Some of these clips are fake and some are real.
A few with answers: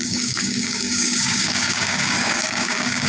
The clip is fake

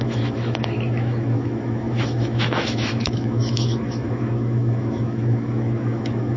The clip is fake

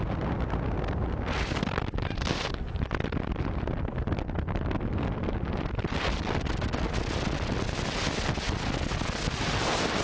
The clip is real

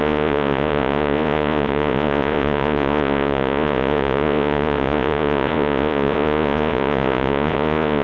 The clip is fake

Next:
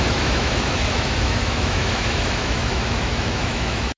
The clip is fake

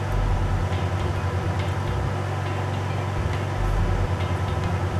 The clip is real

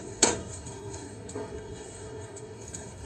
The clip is fake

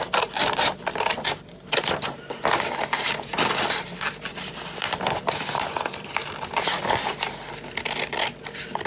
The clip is fake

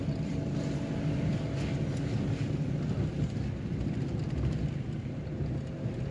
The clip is real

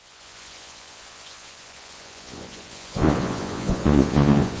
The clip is fake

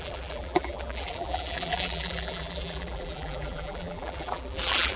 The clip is fake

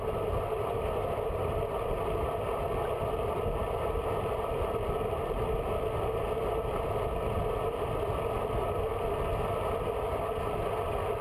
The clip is real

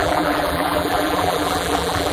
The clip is fake